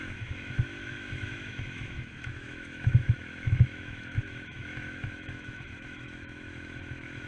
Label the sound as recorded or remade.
remade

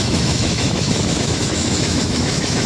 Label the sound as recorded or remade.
remade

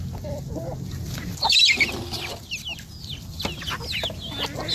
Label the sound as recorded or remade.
recorded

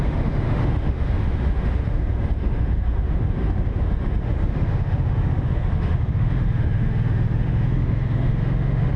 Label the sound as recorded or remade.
remade